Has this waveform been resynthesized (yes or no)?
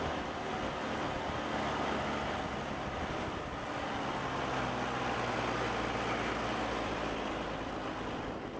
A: no